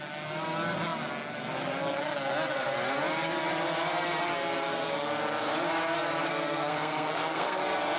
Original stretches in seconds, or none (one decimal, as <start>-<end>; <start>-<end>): 0.0-6.3; 7.6-8.0